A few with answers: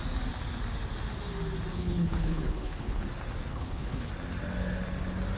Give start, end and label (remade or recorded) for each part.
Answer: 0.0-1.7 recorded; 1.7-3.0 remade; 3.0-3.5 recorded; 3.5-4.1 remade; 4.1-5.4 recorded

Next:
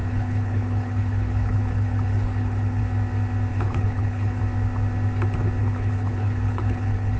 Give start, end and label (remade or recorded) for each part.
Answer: 0.0-2.8 remade; 2.8-3.5 recorded; 3.5-4.4 remade; 4.4-5.6 recorded; 5.6-7.2 remade